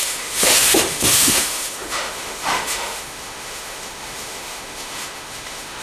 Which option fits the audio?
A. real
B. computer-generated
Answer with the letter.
B